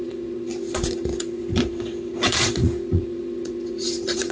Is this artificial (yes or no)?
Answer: yes